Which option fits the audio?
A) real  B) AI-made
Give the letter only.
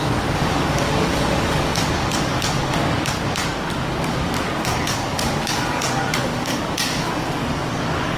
B